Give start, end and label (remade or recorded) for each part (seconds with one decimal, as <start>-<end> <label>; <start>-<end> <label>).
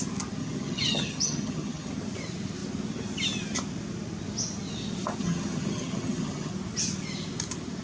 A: 0.0-0.4 recorded; 0.4-1.9 remade; 1.9-5.2 recorded; 5.2-6.5 remade; 6.5-7.8 recorded